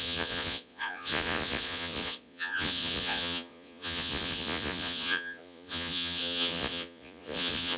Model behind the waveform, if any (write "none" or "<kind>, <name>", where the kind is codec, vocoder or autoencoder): vocoder, Vocos